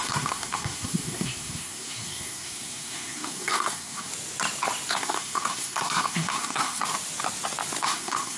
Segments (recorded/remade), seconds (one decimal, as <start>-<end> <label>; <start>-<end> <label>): 0.0-4.1 remade; 4.1-4.9 recorded; 4.9-6.8 remade; 6.8-7.8 recorded; 7.8-8.4 remade